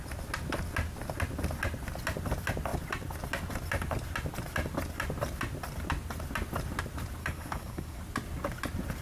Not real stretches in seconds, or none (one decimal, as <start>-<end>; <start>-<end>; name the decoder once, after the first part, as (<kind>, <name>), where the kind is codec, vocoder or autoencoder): 7.2-8.0 (codec, DAC)